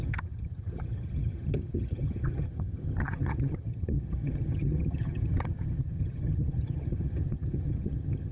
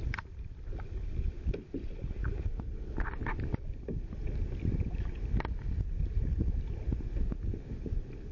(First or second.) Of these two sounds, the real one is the second